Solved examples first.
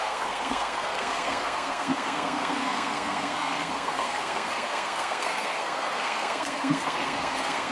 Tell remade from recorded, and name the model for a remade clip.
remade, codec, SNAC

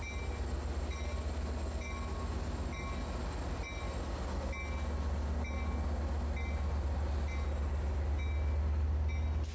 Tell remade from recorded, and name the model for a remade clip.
recorded